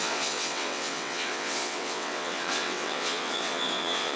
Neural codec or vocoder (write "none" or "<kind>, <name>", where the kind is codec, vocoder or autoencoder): vocoder, WaveNeXt